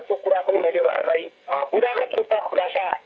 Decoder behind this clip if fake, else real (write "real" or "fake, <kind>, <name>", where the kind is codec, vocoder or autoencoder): fake, codec, SNAC